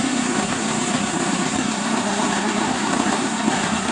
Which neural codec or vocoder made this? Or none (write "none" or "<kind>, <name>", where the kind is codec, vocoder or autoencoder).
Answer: codec, SNAC